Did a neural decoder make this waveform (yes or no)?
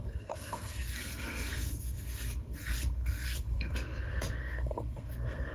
yes